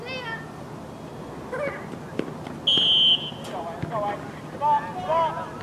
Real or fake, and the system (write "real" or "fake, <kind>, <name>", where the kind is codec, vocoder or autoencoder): real